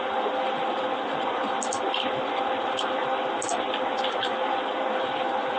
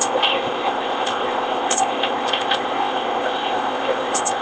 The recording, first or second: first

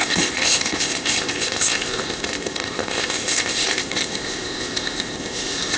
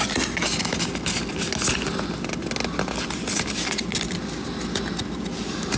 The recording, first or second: second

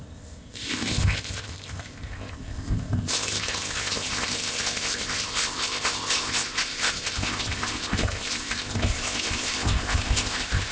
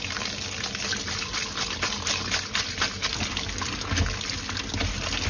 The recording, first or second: second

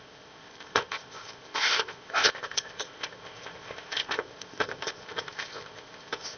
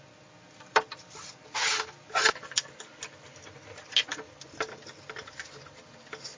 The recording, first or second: second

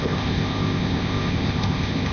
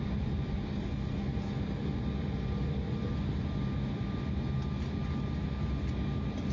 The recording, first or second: second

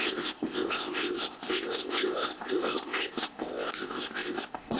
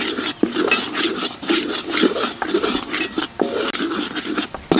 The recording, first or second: second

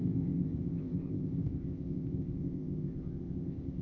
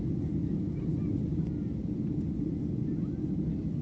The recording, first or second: second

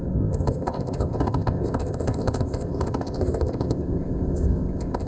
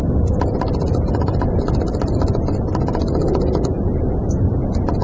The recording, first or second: second